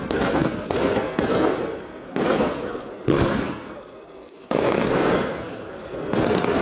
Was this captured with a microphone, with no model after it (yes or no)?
no